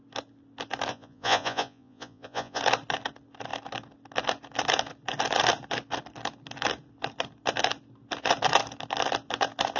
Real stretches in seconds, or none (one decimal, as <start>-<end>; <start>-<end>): 0.0-0.9; 2.6-9.8